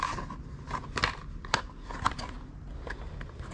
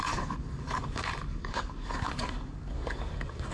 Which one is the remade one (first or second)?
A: second